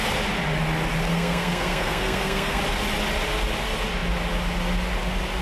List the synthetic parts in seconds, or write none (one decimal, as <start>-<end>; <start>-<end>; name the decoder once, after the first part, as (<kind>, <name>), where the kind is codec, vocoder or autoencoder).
1.1-2.6 (codec, SNAC)